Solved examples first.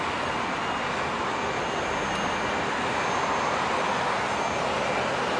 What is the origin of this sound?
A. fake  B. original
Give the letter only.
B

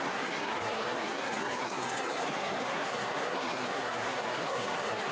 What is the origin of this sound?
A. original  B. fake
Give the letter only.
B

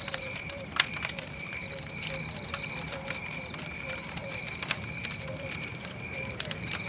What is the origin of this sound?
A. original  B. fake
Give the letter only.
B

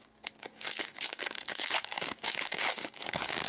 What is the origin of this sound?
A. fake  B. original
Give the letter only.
A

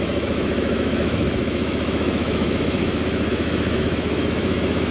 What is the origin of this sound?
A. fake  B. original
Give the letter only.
A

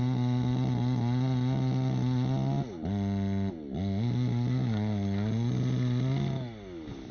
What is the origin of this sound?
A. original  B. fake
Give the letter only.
A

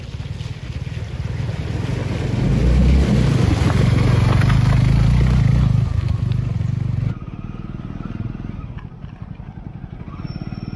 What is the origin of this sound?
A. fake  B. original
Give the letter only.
B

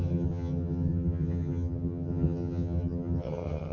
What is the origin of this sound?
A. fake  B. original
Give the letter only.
A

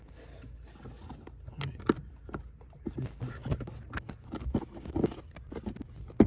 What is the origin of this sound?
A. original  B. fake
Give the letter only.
A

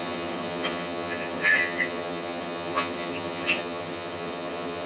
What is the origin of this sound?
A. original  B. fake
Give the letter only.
B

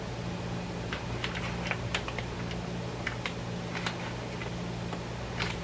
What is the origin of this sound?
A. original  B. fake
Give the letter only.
B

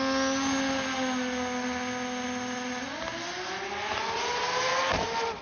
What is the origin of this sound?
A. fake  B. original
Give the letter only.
B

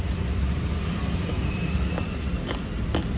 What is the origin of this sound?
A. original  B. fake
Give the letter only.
B